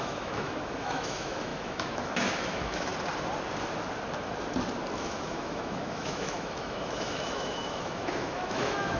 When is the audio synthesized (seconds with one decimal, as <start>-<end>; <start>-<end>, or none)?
0.0-2.9; 5.0-9.0